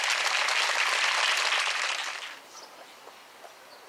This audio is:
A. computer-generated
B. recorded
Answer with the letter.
B